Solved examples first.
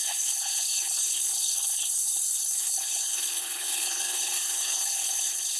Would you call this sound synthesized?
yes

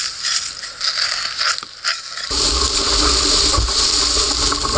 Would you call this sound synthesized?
no